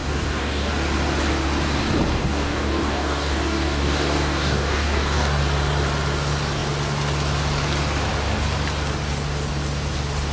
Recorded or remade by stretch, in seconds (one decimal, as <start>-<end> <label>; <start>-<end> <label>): 0.0-0.7 remade; 0.7-2.1 recorded; 2.1-5.4 remade; 5.4-10.3 recorded